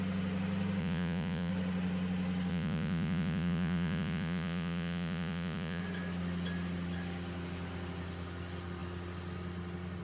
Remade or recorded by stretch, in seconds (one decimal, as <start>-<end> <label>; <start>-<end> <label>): 0.0-0.8 recorded; 0.8-1.5 remade; 1.5-2.5 recorded; 2.5-5.8 remade; 5.8-10.0 recorded